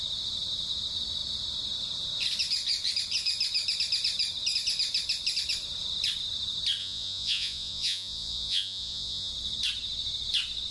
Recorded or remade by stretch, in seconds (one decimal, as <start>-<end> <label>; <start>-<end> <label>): 0.0-6.8 recorded; 6.8-9.3 remade; 9.3-10.7 recorded